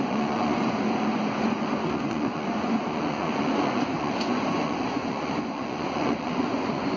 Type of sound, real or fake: fake